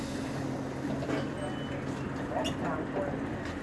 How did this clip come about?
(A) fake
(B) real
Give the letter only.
B